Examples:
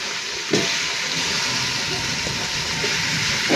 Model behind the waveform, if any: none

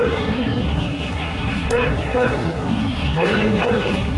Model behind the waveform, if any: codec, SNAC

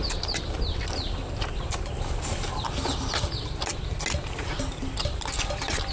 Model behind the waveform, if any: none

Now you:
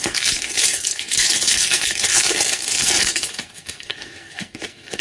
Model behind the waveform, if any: codec, SNAC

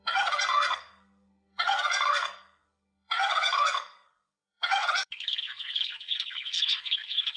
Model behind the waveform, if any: codec, SNAC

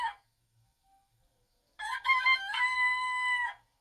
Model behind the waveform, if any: codec, SNAC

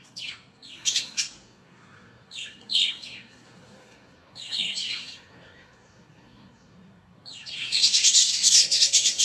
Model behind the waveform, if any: codec, SNAC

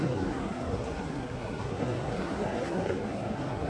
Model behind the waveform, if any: codec, SNAC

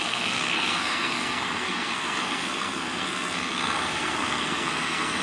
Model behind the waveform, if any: codec, SNAC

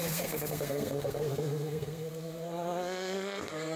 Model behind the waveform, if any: codec, SNAC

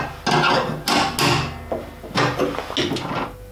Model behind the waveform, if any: none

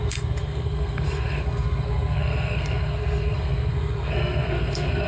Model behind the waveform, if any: codec, SNAC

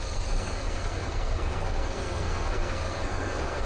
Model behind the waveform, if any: codec, SNAC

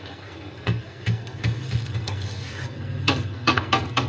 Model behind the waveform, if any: codec, SNAC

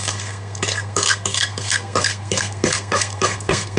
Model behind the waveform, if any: codec, SNAC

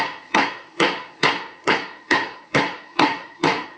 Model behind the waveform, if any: codec, SNAC